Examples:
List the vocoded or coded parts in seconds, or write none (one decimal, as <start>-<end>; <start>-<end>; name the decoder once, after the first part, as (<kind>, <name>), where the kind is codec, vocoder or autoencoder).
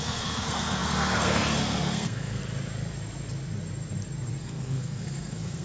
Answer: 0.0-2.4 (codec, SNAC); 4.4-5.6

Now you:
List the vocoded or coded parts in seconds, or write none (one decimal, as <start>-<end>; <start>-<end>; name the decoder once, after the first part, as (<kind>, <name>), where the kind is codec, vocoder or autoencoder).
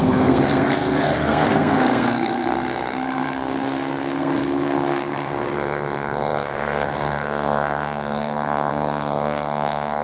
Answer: 0.0-10.0 (codec, SNAC)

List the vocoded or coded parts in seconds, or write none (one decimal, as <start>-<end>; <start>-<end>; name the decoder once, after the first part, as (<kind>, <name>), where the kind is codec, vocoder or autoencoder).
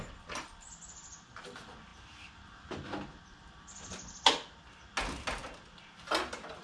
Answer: none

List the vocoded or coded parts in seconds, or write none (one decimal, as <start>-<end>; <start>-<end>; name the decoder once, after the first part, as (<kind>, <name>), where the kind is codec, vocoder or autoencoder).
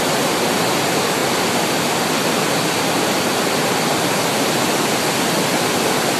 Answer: none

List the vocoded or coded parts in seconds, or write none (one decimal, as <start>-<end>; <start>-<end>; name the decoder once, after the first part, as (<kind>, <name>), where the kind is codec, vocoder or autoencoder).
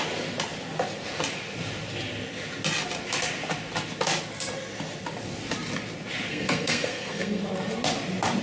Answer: 6.3-7.4 (codec, SNAC)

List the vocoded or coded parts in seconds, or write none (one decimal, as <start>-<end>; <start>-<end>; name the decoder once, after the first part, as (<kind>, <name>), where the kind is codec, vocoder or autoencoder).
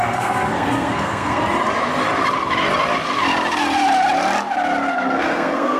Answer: 0.0-1.4 (codec, SNAC); 4.9-5.8